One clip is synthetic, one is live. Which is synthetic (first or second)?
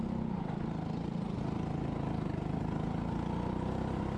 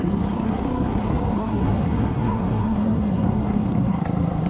second